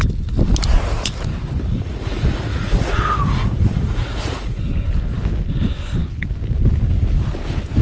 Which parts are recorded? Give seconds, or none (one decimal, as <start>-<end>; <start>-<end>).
0.0-1.7; 4.6-7.8